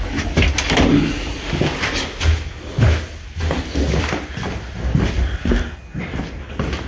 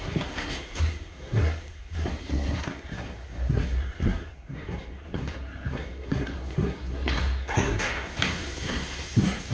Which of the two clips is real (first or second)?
first